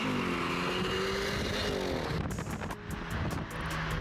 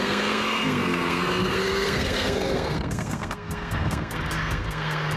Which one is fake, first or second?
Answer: second